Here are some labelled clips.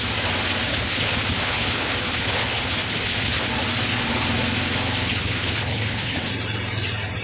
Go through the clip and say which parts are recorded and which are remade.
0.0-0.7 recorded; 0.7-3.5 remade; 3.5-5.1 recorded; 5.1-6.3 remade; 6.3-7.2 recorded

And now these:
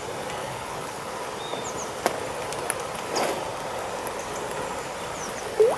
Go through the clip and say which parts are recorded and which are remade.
0.0-0.4 recorded; 0.4-1.1 remade; 1.1-5.8 recorded

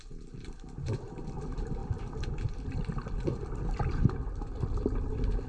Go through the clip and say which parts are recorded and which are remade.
0.0-5.5 recorded

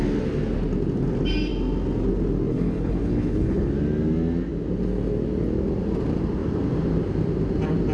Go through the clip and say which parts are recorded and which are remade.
0.0-2.5 recorded; 2.5-3.7 remade; 3.7-7.9 recorded

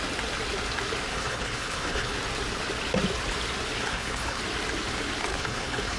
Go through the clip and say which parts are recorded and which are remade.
0.0-1.1 recorded; 1.1-2.1 remade; 2.1-3.9 recorded; 3.9-4.4 remade; 4.4-5.3 recorded; 5.3-6.0 remade

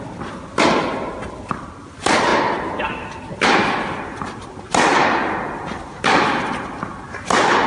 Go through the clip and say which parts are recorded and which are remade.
0.0-7.7 recorded